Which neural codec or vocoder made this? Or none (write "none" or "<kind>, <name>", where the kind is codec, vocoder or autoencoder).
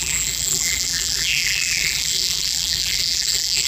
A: vocoder, BigVGAN v2